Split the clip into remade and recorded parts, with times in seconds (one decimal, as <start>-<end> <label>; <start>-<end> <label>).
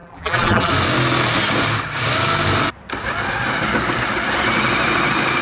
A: 0.0-0.7 remade; 0.7-5.4 recorded